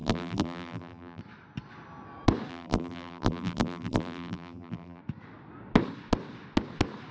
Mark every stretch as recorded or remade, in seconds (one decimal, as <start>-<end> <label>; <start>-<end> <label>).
0.0-1.2 remade; 1.2-2.5 recorded; 2.5-5.0 remade; 5.0-7.1 recorded